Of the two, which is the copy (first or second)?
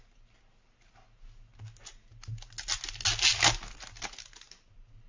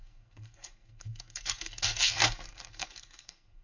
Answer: second